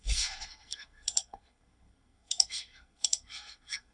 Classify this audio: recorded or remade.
remade